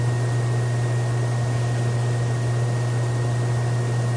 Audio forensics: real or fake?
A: real